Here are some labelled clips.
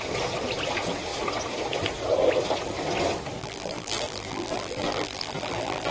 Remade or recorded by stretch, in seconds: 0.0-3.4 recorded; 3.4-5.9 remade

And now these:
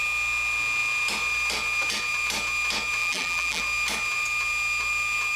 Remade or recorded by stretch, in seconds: 0.0-3.0 recorded; 3.0-3.6 remade; 3.6-5.4 recorded